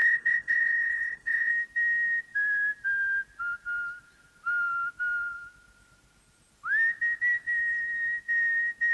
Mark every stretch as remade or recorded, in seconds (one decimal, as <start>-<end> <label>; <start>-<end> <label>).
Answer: 0.0-1.5 remade; 1.5-8.9 recorded